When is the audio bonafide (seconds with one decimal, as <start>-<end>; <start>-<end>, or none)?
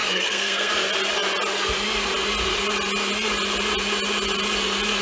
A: 0.7-5.0